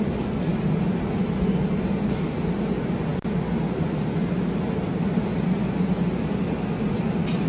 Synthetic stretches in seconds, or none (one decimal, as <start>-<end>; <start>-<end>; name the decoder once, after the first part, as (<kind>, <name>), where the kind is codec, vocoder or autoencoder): none